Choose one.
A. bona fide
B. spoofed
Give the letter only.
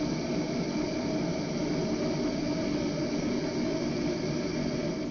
A